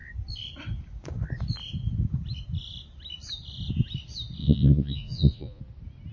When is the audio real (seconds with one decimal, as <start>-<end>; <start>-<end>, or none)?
0.0-4.4; 5.6-6.1